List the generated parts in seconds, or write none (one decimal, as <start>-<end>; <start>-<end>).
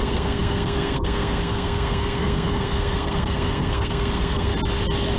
0.0-4.5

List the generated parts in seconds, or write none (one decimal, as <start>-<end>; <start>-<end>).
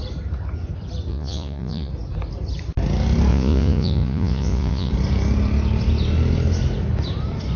1.1-1.9; 3.3-4.9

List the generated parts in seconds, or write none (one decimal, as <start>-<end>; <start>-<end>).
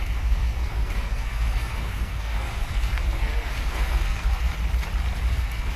0.0-4.5; 5.3-5.8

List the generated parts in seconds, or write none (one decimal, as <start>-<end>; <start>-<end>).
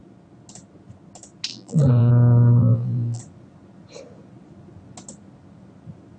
1.5-2.1; 2.6-3.2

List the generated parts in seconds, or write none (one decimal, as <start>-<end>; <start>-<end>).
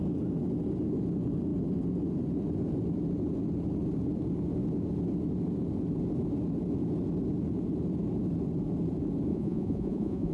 9.3-10.3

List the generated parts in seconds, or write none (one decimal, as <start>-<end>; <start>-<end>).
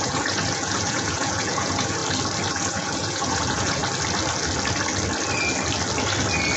0.0-2.0; 2.5-3.8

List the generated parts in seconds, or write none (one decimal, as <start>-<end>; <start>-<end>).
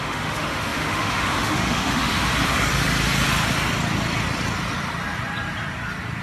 0.0-2.3